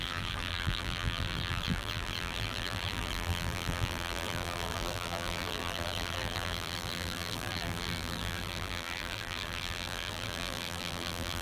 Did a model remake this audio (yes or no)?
yes